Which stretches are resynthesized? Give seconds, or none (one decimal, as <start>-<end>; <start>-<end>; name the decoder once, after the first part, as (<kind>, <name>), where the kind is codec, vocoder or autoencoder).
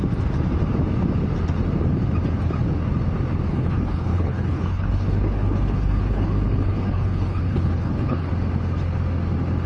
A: 3.5-8.3 (codec, HILCodec)